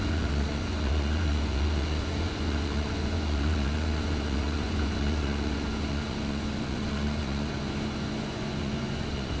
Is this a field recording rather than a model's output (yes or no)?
no